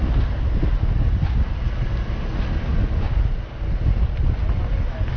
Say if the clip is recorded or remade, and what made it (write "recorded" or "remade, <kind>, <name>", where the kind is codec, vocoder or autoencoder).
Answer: recorded